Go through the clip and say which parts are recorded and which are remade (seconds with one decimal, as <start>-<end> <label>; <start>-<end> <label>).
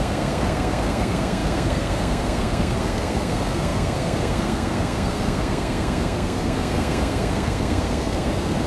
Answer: 0.0-8.7 remade